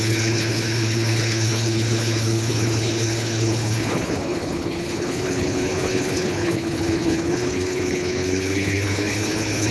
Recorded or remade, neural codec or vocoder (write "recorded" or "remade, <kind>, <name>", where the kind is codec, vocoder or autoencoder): remade, codec, HILCodec